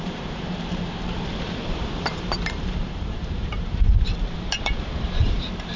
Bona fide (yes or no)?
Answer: no